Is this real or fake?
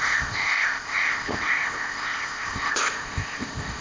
fake